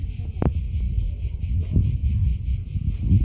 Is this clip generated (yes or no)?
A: no